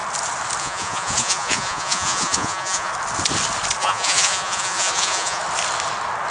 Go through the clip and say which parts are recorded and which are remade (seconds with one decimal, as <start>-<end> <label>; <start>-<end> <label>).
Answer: 0.0-0.6 recorded; 0.6-2.9 remade; 2.9-3.8 recorded; 3.8-5.4 remade; 5.4-6.3 recorded